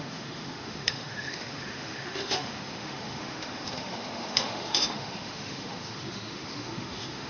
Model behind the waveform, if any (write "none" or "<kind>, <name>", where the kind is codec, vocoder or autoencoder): autoencoder, DAC-VAE